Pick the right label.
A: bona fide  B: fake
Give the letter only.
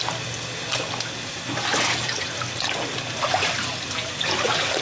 A